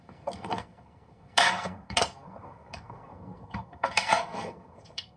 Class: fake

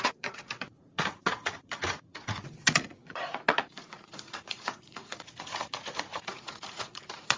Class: fake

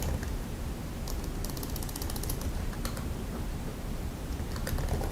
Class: real